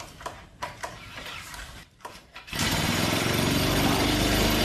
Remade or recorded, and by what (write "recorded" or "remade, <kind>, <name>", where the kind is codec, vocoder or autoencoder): remade, vocoder, BigVGAN v2